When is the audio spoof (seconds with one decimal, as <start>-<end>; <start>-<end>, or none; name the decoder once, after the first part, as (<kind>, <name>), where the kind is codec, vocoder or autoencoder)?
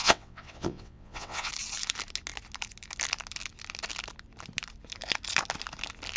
0.0-1.5 (vocoder, WaveNeXt)